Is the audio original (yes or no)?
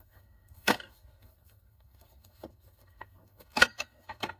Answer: no